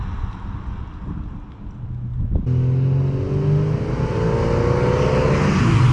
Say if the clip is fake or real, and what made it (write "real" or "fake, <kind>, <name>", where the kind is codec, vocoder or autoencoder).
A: real